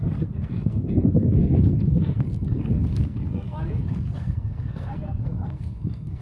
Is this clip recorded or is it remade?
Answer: remade